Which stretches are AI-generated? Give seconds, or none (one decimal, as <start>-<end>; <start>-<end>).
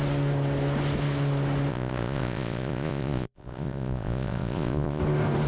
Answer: 1.7-5.0